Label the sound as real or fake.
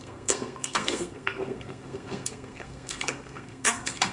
fake